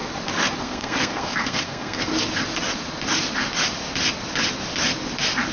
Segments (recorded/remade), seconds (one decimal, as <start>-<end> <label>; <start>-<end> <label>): 0.0-0.6 recorded; 0.6-2.1 remade; 2.1-5.5 recorded